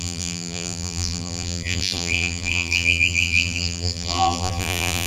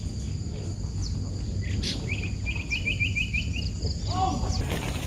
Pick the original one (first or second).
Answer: second